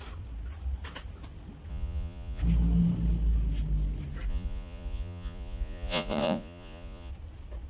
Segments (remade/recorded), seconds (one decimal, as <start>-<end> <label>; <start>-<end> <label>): 0.0-1.7 recorded; 1.7-2.4 remade; 2.4-4.3 recorded; 4.3-7.1 remade; 7.1-7.7 recorded